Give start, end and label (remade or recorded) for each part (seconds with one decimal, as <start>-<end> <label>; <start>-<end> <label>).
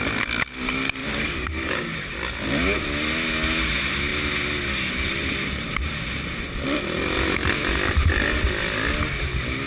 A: 0.0-1.0 recorded; 1.0-2.1 remade; 2.1-9.7 recorded